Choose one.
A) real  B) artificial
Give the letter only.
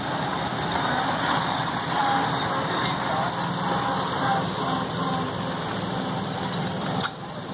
A